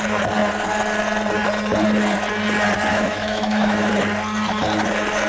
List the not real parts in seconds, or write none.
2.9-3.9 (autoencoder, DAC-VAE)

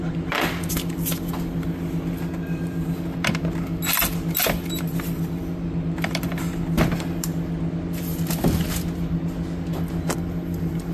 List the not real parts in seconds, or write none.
none

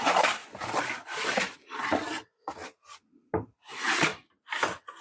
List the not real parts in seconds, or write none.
0.0-0.4 (vocoder, BigVGAN v2); 3.4-4.1; 4.6-5.0

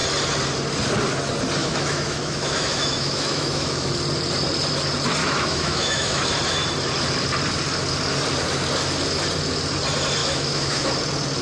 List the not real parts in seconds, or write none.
1.6-3.9 (autoencoder, DAC-VAE); 5.2-6.3; 10.2-10.9

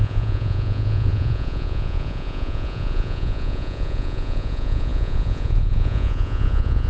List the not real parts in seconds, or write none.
0.0-6.9 (vocoder, Vocos)

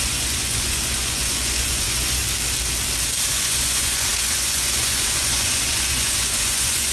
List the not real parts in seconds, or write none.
0.0-2.2 (vocoder, Vocos); 3.3-6.9

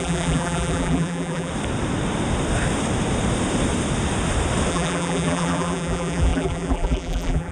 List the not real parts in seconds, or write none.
0.0-1.5 (vocoder, BigVGAN v2); 4.7-7.5